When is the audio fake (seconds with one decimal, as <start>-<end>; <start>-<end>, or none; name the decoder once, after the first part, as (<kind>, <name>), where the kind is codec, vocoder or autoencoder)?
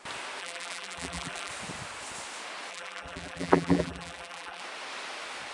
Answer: 0.4-1.5 (vocoder, BigVGAN v2); 2.7-4.6